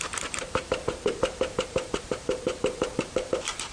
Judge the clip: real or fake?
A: fake